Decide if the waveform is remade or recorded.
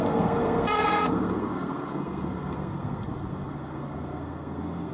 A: remade